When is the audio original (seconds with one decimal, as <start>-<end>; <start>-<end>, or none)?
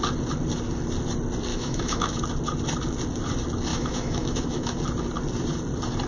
0.0-1.5; 2.2-3.7; 4.8-6.1